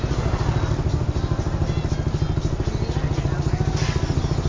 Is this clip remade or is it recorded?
recorded